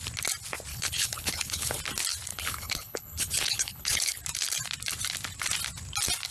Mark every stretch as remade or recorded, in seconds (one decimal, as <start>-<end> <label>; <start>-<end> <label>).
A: 0.0-0.7 recorded; 0.7-1.8 remade; 1.8-2.3 recorded; 2.3-4.2 remade; 4.2-6.3 recorded